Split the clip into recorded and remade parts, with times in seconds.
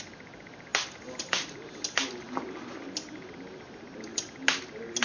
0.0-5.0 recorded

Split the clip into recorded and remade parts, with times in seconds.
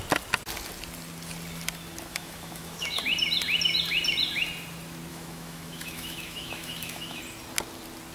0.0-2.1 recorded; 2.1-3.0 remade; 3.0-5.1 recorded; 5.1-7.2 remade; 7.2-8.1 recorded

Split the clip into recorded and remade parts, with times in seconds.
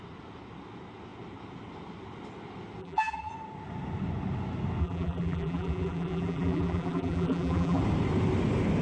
0.0-2.8 recorded; 2.8-3.3 remade; 3.3-4.8 recorded; 4.8-7.8 remade; 7.8-8.8 recorded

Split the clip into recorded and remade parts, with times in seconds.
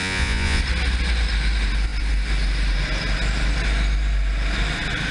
0.0-0.6 remade; 0.6-5.1 recorded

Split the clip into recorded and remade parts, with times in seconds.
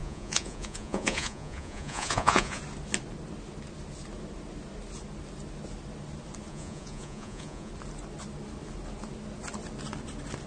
0.0-2.6 remade; 2.6-6.5 recorded; 6.5-7.7 remade; 7.7-10.5 recorded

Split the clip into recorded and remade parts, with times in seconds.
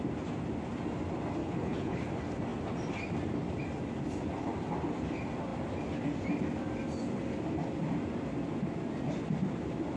0.0-1.4 recorded; 1.4-2.0 remade; 2.0-10.0 recorded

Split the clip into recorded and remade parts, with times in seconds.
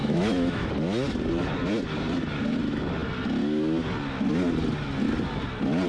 0.0-0.7 remade; 0.7-5.9 recorded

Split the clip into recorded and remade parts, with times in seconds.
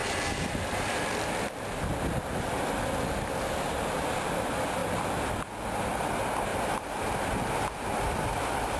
0.0-4.0 recorded; 4.0-4.8 remade; 4.8-5.8 recorded; 5.8-6.5 remade; 6.5-7.4 recorded; 7.4-8.8 remade